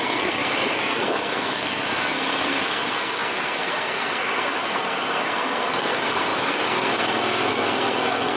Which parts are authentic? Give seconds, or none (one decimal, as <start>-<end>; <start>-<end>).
none